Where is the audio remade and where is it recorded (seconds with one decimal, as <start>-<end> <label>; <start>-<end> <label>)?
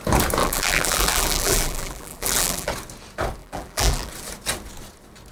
0.0-0.4 recorded; 0.4-2.7 remade; 2.7-3.4 recorded; 3.4-4.1 remade; 4.1-5.3 recorded